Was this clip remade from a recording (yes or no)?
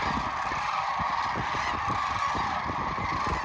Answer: no